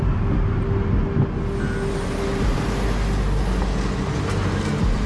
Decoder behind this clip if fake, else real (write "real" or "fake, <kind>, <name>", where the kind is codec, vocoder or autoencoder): real